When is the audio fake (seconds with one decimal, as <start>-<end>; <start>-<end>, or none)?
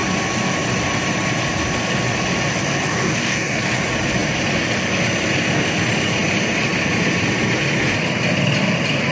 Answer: 2.9-3.6